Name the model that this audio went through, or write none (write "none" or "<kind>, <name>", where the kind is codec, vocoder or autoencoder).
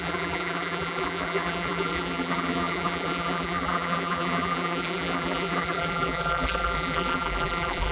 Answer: vocoder, BigVGAN v2